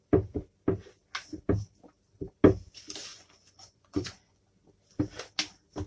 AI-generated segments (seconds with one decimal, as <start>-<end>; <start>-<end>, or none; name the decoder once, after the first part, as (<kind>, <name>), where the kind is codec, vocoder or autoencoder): 3.1-4.4 (vocoder, Vocos)